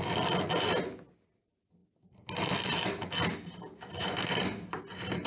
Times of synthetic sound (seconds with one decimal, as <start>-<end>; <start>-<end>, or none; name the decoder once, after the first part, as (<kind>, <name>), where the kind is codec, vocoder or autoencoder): none